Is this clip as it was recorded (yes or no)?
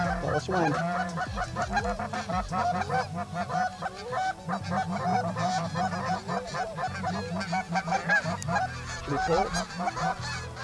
yes